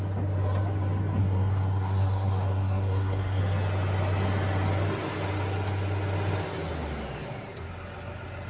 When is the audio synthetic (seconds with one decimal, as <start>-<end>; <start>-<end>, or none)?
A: 1.2-3.4